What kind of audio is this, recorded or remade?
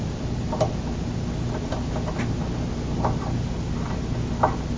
recorded